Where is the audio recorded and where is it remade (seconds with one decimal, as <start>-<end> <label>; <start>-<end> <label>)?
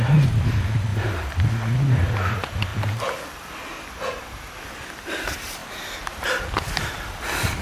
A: 0.0-0.9 recorded; 0.9-1.5 remade; 1.5-2.7 recorded; 2.7-3.3 remade; 3.3-7.6 recorded